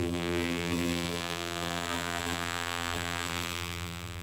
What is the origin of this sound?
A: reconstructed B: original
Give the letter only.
A